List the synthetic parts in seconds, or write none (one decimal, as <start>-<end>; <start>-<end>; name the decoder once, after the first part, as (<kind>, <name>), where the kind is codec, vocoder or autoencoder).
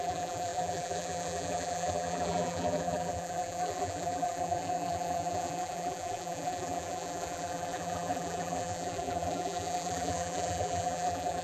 0.0-11.4 (vocoder, BigVGAN v2)